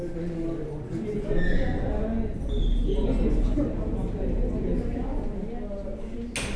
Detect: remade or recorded recorded